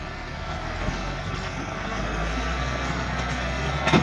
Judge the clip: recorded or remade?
remade